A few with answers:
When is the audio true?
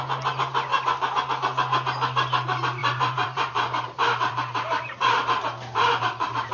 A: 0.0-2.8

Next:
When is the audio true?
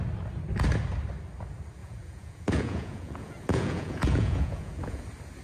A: 0.0-1.8; 5.0-5.4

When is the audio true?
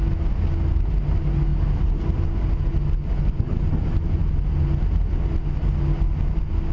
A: 0.0-6.7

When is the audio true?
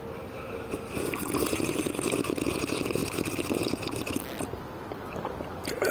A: 0.0-5.9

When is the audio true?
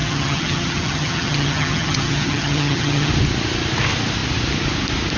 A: 3.1-5.2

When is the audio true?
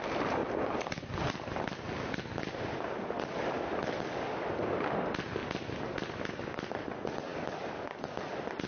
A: 0.0-8.7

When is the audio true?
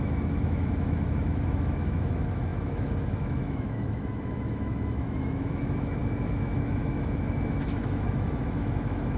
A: none